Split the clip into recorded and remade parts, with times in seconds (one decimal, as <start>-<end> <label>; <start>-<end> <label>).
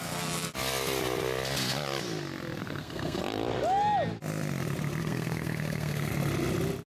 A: 0.0-2.6 recorded; 2.6-3.2 remade; 3.2-5.0 recorded; 5.0-6.1 remade; 6.1-6.9 recorded